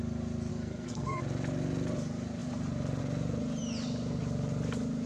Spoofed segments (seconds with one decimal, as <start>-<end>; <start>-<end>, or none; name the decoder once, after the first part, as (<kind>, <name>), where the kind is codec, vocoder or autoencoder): 0.5-1.2 (codec, SNAC)